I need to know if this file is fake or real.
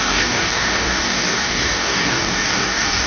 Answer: fake